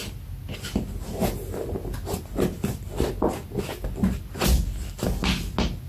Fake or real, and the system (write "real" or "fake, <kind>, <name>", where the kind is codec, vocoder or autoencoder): real